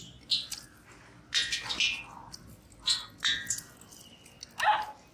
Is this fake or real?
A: real